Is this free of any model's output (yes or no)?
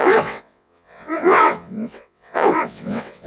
no